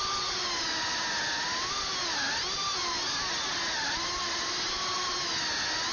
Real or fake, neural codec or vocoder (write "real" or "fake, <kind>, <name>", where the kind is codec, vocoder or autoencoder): real